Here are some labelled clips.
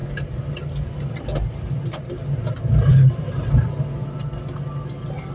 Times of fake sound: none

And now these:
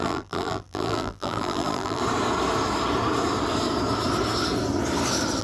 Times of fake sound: 0.0-2.0 (vocoder, BigVGAN v2)

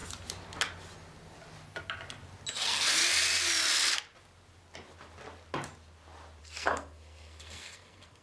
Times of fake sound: 2.5-3.0 (codec, SNAC); 6.4-8.2